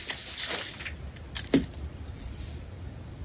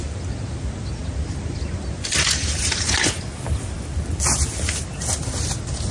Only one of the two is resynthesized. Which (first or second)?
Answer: first